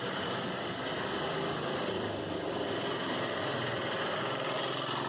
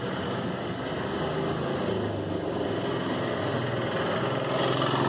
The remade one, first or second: first